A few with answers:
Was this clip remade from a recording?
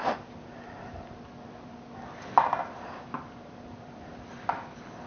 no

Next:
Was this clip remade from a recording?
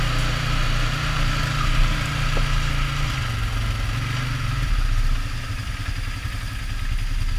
no